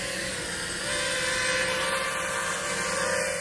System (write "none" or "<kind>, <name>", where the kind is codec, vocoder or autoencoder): none